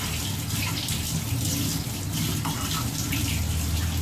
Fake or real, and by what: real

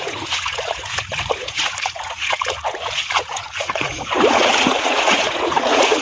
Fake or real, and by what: fake, vocoder, Vocos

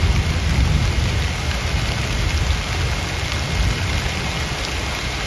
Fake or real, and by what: real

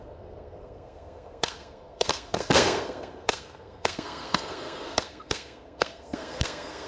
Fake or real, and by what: fake, codec, SNAC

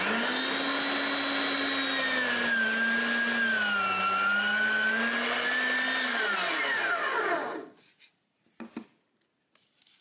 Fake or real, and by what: real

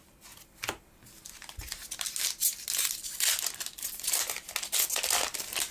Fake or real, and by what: real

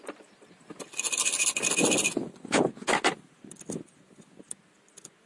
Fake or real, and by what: real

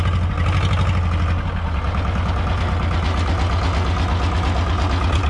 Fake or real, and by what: real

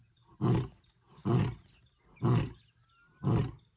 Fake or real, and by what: real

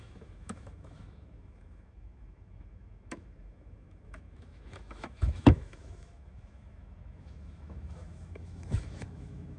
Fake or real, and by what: fake, autoencoder, DAC-VAE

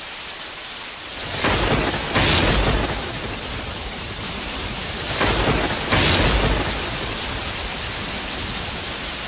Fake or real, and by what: real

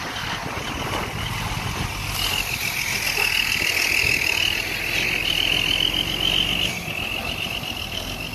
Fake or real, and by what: real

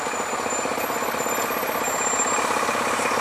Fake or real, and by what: real